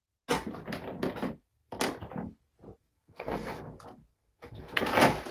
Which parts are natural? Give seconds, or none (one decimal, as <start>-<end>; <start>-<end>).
0.0-2.8; 3.6-4.1; 4.8-5.3